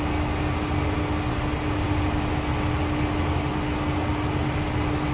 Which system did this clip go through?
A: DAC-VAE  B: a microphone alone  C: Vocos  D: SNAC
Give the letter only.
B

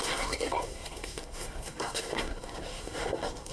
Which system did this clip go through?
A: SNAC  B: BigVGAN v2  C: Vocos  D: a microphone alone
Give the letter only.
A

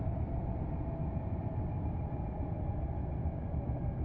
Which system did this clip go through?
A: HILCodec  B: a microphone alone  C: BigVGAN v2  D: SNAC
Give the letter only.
B